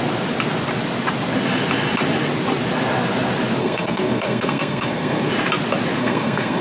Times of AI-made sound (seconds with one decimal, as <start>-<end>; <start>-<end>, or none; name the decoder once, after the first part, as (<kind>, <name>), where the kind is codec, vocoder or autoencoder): 3.6-5.3 (codec, SNAC); 6.0-6.6